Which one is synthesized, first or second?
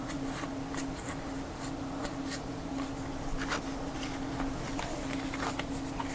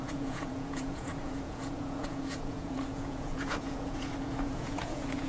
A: second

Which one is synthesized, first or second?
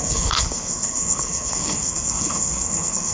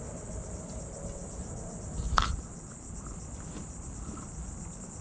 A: first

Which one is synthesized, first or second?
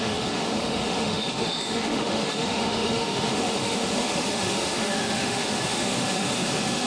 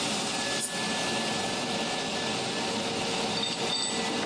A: first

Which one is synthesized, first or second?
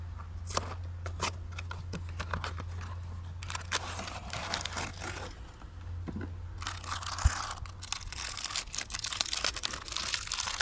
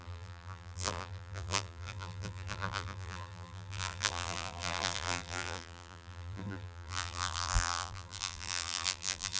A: second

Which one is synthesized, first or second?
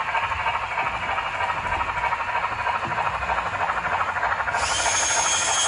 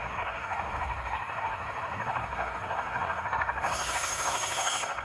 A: second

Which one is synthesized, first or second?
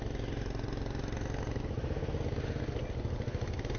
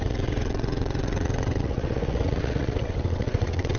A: second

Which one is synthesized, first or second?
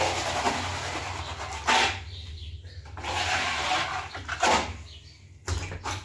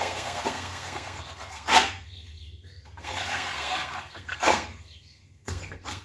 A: second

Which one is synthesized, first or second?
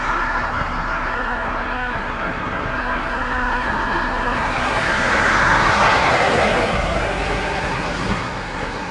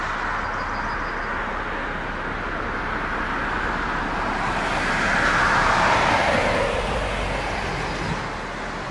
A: first